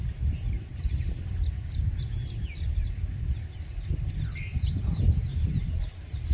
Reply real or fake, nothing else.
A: real